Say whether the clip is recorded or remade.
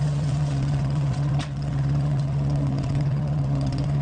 remade